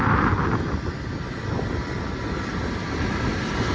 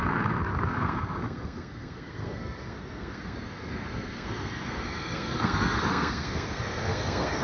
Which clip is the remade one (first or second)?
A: second